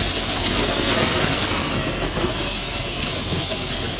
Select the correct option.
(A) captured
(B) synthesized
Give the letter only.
B